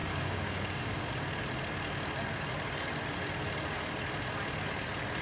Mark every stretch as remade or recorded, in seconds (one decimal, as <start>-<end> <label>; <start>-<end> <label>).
0.0-1.1 remade; 1.1-5.2 recorded

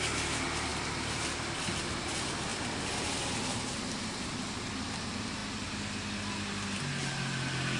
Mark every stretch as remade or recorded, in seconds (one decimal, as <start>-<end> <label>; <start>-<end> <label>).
0.0-7.8 recorded

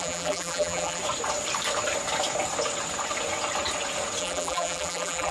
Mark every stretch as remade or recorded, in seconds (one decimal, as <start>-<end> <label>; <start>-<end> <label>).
0.0-1.0 remade; 1.0-4.2 recorded; 4.2-5.3 remade

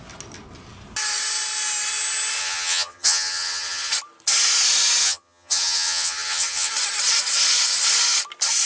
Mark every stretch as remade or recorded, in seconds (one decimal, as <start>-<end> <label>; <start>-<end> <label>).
0.0-2.4 recorded; 2.4-3.9 remade; 3.9-5.0 recorded; 5.0-6.7 remade; 6.7-8.7 recorded

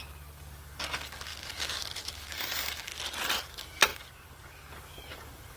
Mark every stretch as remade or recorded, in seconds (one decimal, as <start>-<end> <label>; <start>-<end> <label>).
0.0-2.9 remade; 2.9-3.4 recorded; 3.4-5.6 remade